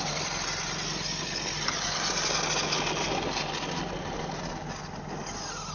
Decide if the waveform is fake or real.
real